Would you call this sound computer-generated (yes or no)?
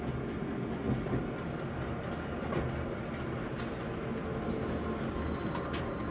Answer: no